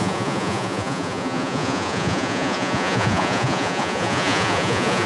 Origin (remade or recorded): remade